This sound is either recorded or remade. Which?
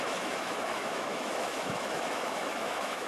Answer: remade